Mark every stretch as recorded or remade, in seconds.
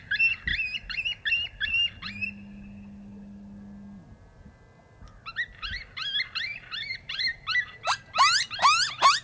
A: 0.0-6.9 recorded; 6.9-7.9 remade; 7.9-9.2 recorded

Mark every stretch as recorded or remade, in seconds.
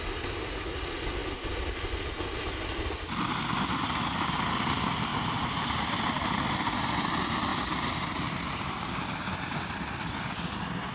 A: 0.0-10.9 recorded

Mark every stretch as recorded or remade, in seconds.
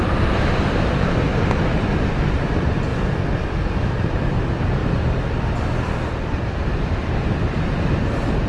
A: 0.0-1.3 remade; 1.3-2.2 recorded; 2.2-2.9 remade; 2.9-3.9 recorded; 3.9-4.8 remade; 4.8-7.8 recorded; 7.8-8.5 remade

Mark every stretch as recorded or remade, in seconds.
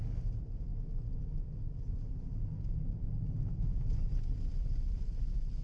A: 0.0-5.6 recorded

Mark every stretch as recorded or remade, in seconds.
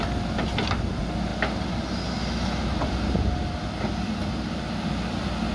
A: 0.0-5.5 recorded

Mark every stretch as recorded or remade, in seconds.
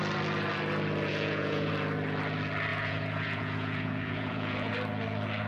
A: 0.0-1.1 recorded; 1.1-1.7 remade; 1.7-2.7 recorded; 2.7-4.7 remade; 4.7-5.5 recorded